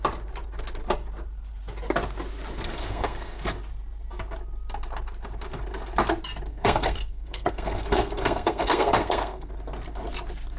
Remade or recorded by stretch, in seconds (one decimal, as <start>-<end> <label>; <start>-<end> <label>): 0.0-2.7 recorded; 2.7-3.4 remade; 3.4-6.5 recorded; 6.5-9.5 remade; 9.5-10.6 recorded